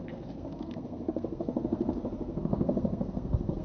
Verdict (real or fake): fake